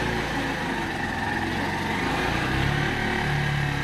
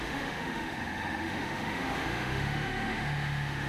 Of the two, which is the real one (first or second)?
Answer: first